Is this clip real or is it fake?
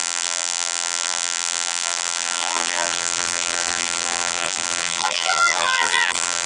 fake